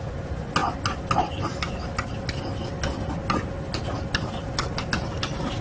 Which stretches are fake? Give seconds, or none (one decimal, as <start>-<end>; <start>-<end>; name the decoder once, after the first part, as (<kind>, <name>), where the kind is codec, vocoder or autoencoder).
none